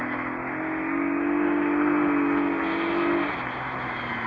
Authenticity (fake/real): real